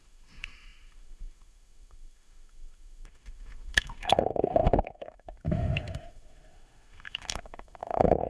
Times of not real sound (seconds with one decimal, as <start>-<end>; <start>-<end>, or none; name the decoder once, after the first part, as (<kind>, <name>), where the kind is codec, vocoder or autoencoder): 0.0-8.3 (autoencoder, DAC-VAE)